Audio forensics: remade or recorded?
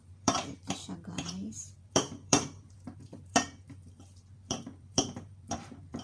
remade